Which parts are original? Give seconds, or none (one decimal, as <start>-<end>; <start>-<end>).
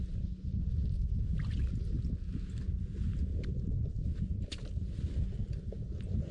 0.0-0.8; 1.9-3.9; 5.7-6.3